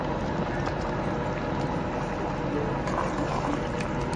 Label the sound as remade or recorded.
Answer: recorded